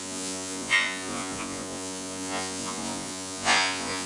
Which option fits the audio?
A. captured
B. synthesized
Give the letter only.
B